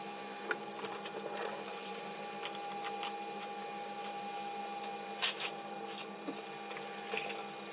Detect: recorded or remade recorded